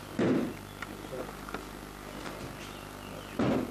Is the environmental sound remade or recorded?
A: recorded